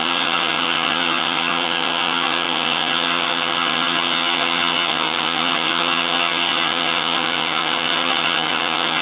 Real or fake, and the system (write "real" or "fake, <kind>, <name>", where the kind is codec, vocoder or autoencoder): fake, vocoder, HiFi-GAN